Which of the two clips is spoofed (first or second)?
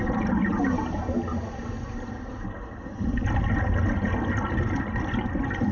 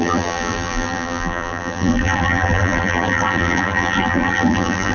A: second